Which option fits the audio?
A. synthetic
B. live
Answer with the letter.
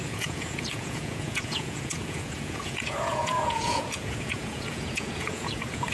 A